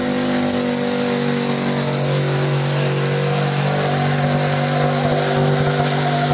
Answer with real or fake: real